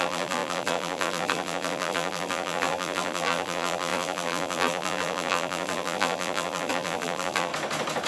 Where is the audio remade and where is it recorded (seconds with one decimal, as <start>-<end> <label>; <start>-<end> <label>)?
0.0-7.5 remade; 7.5-8.1 recorded